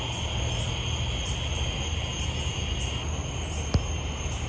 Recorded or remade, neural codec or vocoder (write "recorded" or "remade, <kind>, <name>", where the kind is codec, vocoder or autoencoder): recorded